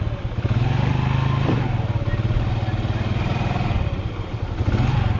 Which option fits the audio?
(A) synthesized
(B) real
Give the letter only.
B